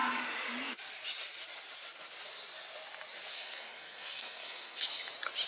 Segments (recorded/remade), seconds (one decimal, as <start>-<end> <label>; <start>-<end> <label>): 0.0-3.3 recorded; 3.3-4.9 remade; 4.9-5.5 recorded